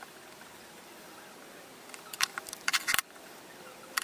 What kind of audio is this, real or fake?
fake